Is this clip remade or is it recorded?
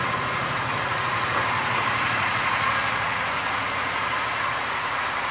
remade